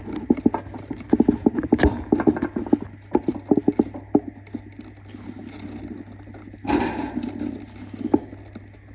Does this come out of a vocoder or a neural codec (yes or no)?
no